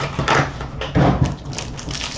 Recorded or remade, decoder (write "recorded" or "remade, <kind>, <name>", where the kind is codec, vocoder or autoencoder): recorded